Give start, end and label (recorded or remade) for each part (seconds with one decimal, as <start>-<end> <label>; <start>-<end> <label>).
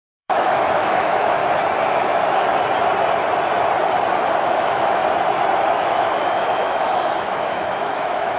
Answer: 0.0-1.4 remade; 1.4-1.9 recorded; 1.9-2.5 remade; 2.5-4.4 recorded; 4.4-5.0 remade; 5.0-5.6 recorded; 5.6-8.4 remade